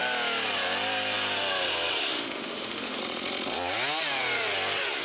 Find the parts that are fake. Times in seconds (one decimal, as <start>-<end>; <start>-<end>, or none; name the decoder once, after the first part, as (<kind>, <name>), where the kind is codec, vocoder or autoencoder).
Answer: 2.1-3.0 (autoencoder, DAC-VAE)